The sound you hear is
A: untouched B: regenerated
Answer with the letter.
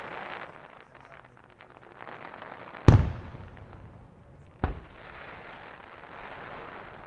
A